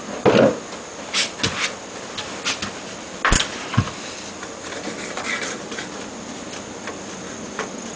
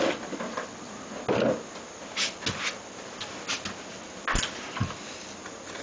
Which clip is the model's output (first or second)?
first